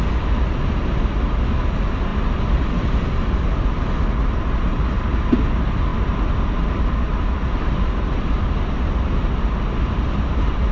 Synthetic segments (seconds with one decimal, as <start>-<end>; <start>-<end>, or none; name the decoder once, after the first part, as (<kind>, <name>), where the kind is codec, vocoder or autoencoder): none